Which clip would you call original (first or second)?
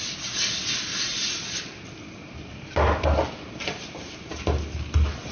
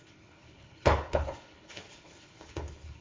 first